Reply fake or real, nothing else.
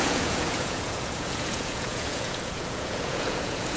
fake